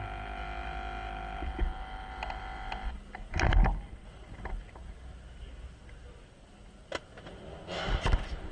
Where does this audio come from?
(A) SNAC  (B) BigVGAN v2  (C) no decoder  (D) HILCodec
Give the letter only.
C